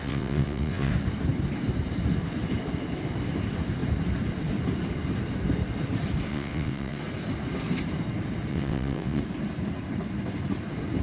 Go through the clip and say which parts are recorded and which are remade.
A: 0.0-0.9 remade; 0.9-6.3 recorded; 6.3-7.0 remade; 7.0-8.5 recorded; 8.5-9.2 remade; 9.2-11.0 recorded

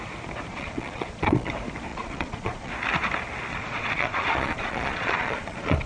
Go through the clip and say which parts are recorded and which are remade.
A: 0.0-0.5 recorded; 0.5-1.5 remade; 1.5-1.9 recorded; 1.9-2.7 remade; 2.7-3.5 recorded; 3.5-5.9 remade

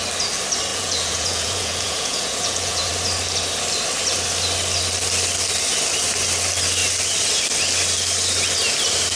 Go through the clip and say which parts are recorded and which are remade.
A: 0.0-0.7 recorded; 0.7-2.9 remade; 2.9-9.2 recorded

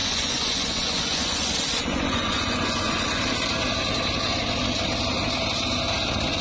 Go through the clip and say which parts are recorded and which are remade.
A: 0.0-1.5 remade; 1.5-1.9 recorded; 1.9-3.2 remade; 3.2-6.4 recorded

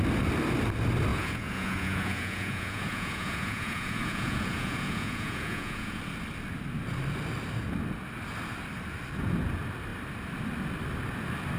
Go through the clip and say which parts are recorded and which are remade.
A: 0.0-1.1 recorded; 1.1-6.0 remade; 6.0-11.6 recorded